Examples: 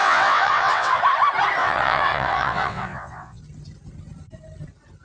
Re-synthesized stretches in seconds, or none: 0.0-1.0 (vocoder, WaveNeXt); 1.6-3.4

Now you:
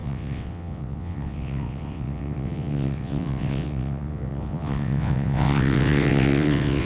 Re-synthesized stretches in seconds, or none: 0.0-6.8 (vocoder, WaveNeXt)